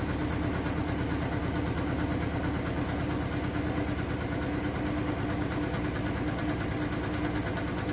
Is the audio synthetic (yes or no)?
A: no